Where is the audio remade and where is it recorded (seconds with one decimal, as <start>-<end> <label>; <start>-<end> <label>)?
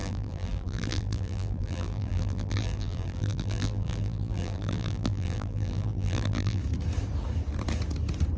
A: 0.0-6.6 remade; 6.6-8.4 recorded